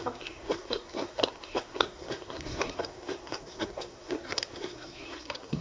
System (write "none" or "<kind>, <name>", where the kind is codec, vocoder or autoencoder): codec, SNAC